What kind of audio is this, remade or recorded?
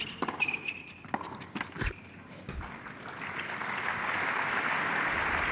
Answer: recorded